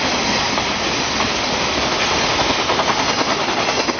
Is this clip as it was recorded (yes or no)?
yes